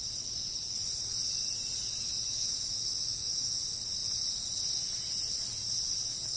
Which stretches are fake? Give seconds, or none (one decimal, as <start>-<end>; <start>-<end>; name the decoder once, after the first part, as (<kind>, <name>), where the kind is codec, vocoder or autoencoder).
2.3-3.6 (autoencoder, DAC-VAE)